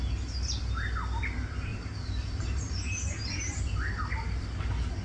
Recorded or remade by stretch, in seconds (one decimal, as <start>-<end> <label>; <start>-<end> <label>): 0.0-1.7 recorded; 1.7-3.6 remade; 3.6-5.0 recorded